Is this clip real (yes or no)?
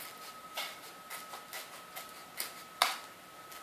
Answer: yes